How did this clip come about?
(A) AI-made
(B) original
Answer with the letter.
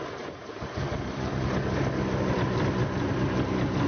B